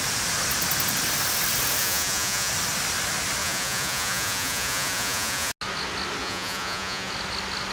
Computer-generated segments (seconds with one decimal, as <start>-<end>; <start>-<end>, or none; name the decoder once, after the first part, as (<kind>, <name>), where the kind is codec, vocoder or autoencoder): 1.8-2.5 (vocoder, Vocos); 3.4-5.5; 6.2-7.1